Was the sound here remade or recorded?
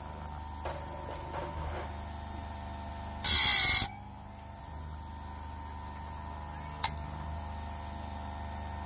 recorded